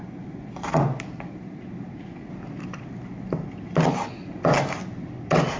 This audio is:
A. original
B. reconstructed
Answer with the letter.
A